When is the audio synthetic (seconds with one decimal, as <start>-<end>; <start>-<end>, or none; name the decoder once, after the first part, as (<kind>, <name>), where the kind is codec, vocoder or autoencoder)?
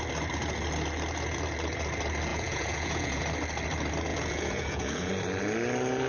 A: 2.3-3.2 (vocoder, Vocos); 4.1-5.1